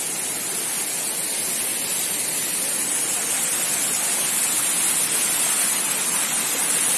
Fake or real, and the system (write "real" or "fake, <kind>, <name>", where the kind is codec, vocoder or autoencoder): real